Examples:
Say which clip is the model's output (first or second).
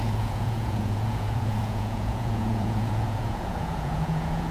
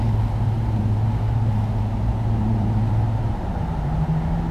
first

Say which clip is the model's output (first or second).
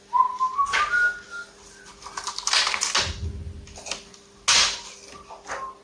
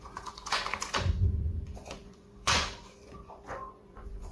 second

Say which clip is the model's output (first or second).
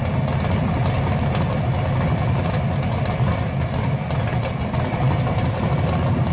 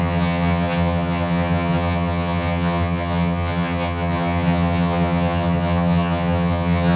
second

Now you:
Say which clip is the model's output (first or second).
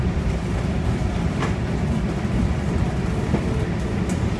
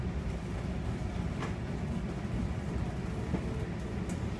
first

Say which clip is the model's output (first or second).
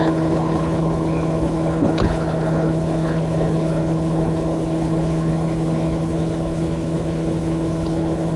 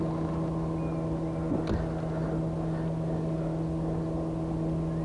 first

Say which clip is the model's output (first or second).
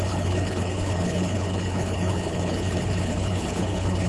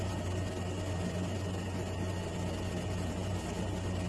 first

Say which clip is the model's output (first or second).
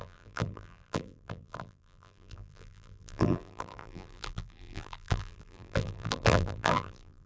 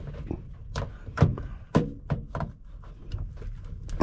first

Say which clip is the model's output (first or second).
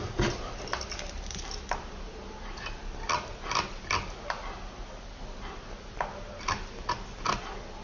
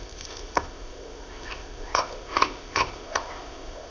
second